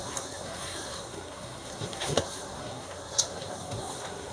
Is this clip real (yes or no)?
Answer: no